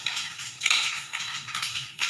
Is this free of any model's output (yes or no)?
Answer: no